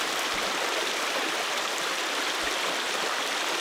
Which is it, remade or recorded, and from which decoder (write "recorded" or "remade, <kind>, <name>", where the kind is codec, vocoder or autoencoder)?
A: recorded